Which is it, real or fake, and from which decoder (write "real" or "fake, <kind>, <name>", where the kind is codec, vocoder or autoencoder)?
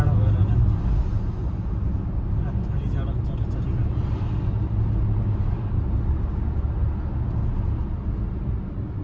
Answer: real